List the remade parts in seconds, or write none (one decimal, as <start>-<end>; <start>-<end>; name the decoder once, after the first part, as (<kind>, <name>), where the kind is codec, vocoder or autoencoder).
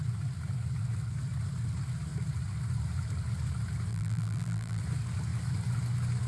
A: 3.9-4.8 (vocoder, BigVGAN v2)